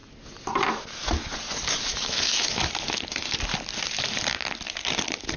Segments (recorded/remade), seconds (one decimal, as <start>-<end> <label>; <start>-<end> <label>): 0.0-1.9 recorded; 1.9-2.6 remade; 2.6-5.4 recorded